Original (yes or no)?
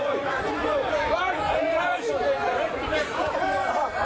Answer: no